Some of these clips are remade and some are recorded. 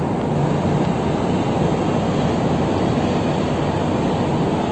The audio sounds recorded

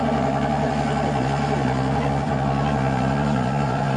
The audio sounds remade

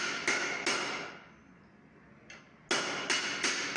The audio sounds recorded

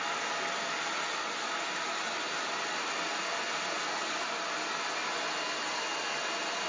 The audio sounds recorded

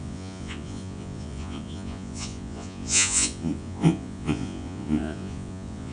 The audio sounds remade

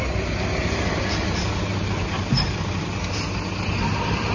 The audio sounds recorded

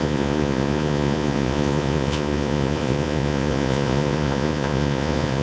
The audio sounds remade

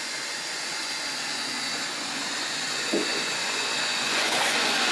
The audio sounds remade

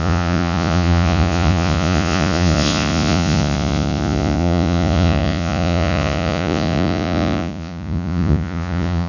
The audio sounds remade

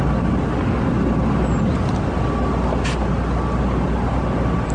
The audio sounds recorded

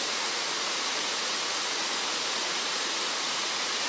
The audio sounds remade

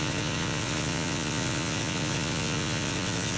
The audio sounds remade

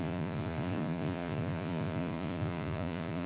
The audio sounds remade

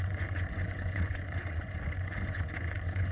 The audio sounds remade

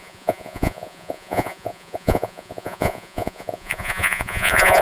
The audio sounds remade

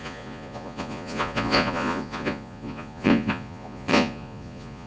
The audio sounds remade